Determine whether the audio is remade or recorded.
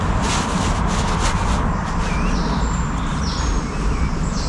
recorded